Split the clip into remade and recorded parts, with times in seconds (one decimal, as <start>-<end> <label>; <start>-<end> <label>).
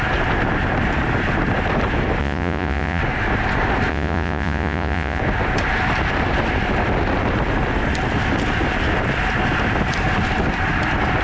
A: 0.0-2.2 recorded; 2.2-3.0 remade; 3.0-3.9 recorded; 3.9-5.2 remade; 5.2-11.2 recorded